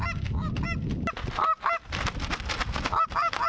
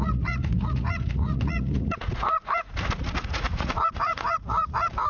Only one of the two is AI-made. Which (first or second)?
second